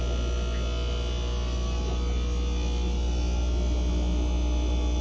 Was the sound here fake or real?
real